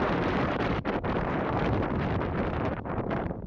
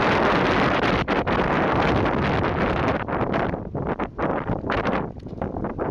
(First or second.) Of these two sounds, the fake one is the first